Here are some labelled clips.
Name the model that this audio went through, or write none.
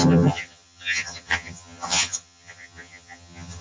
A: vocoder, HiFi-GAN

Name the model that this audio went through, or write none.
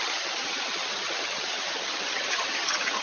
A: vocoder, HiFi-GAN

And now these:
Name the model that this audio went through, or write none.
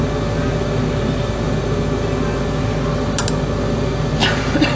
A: none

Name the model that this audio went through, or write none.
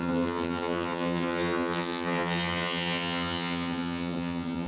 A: vocoder, HiFi-GAN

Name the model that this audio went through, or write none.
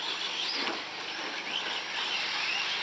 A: none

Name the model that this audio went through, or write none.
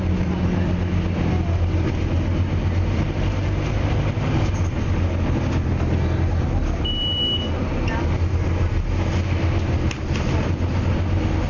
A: none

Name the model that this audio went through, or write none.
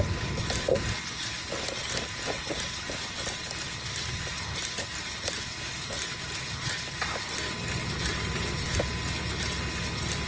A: none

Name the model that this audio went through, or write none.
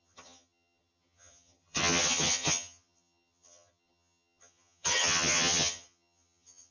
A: vocoder, HiFi-GAN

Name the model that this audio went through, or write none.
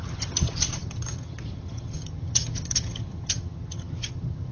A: vocoder, HiFi-GAN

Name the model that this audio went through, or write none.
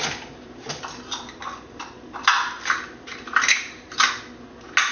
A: none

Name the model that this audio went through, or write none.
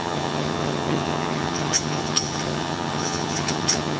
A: vocoder, HiFi-GAN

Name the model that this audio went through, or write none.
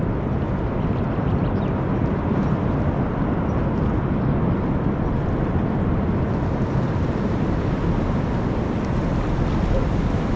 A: none